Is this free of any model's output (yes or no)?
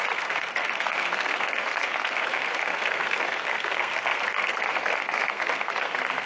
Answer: no